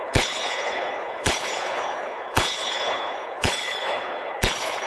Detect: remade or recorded remade